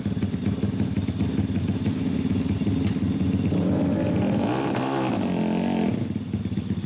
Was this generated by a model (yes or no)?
no